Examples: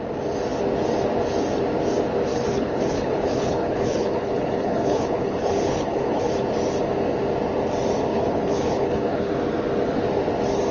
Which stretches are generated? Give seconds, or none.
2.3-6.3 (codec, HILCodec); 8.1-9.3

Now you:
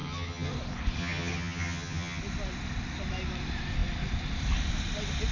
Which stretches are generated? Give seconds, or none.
0.0-0.5 (vocoder, HiFi-GAN); 1.0-2.2

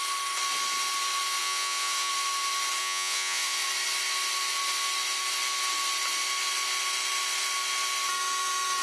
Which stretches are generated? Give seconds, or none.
1.4-2.1 (vocoder, Vocos); 2.8-3.6